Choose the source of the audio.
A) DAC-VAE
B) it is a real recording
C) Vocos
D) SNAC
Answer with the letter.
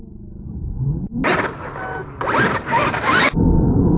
B